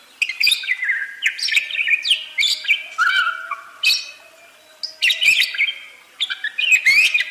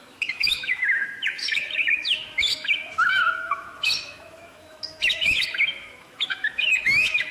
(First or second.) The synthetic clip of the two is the second